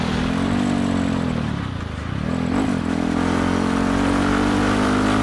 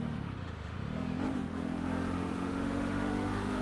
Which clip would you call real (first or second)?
first